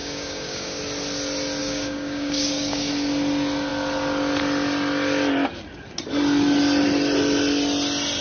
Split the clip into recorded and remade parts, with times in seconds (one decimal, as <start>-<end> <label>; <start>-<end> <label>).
0.0-0.8 remade; 0.8-1.6 recorded; 1.6-2.9 remade; 2.9-8.2 recorded